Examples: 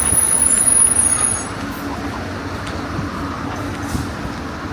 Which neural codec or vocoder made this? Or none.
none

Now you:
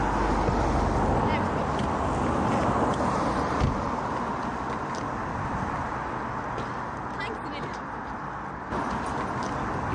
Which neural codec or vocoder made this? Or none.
none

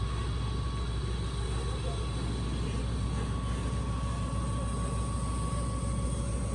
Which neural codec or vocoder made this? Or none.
none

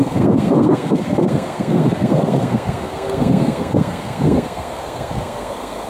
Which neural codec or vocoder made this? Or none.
codec, SNAC